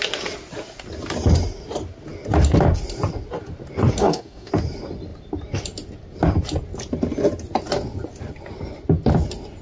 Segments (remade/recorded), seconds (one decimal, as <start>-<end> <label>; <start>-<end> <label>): 0.0-4.0 recorded; 4.0-4.5 remade; 4.5-9.6 recorded